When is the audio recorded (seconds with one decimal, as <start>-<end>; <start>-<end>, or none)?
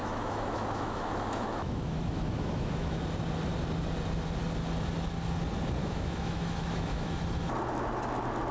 3.0-5.8; 7.2-8.5